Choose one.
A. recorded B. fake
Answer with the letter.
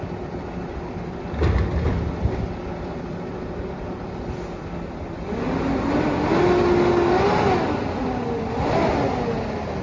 A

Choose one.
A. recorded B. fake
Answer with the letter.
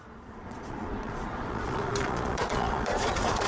B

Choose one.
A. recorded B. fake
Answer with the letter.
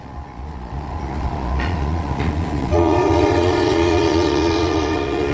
B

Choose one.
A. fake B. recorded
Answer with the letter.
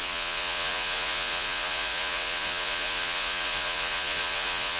A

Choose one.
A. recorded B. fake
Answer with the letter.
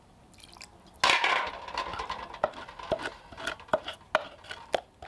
A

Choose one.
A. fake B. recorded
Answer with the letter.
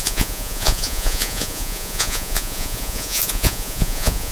A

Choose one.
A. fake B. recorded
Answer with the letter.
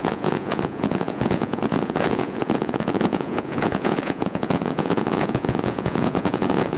A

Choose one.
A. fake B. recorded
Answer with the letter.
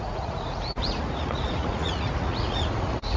A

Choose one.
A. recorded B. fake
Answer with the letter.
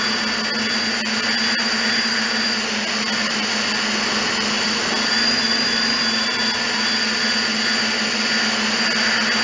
A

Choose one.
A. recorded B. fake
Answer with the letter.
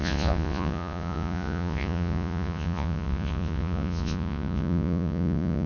B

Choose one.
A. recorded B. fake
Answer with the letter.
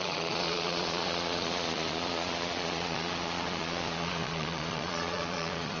B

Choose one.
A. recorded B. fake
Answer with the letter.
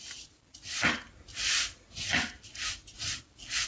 A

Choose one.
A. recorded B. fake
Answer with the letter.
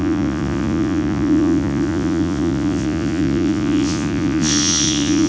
B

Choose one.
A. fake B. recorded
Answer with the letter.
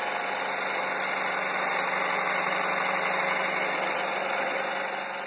B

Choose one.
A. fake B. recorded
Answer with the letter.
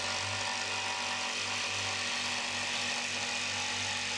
B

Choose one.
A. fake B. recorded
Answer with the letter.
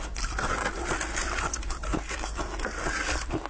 B